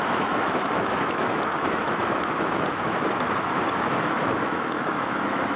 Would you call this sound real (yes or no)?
no